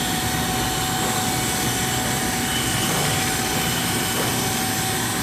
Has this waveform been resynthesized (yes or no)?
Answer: no